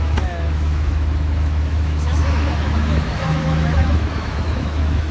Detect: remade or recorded remade